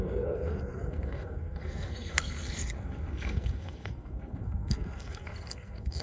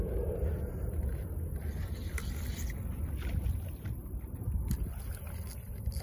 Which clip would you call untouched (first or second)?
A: second